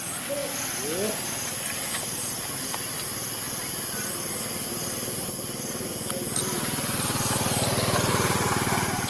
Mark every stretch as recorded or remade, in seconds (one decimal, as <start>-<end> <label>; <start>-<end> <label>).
0.0-9.1 recorded